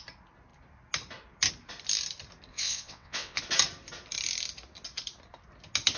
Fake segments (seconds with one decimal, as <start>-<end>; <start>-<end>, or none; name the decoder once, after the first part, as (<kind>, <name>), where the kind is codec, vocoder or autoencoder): 2.5-3.4 (vocoder, WaveNeXt)